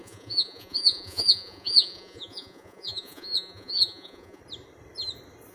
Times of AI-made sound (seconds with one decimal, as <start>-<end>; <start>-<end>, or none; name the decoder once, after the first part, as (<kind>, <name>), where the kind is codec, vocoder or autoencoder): 0.0-4.4 (vocoder, Vocos)